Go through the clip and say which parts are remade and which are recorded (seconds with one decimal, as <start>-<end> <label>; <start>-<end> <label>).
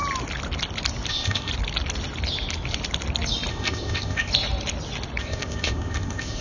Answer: 0.0-1.1 recorded; 1.1-1.5 remade; 1.5-3.5 recorded; 3.5-4.3 remade; 4.3-5.2 recorded; 5.2-6.4 remade